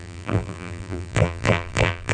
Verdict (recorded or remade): remade